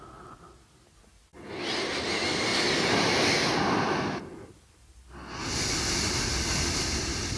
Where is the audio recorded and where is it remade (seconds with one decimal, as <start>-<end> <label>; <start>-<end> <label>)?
0.0-7.4 recorded